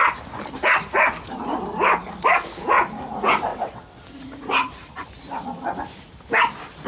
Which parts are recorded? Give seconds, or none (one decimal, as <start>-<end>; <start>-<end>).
0.0-3.5; 4.1-6.9